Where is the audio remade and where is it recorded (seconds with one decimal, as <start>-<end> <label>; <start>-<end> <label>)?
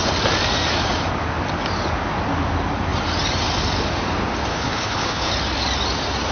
0.0-4.5 recorded; 4.5-5.3 remade; 5.3-6.3 recorded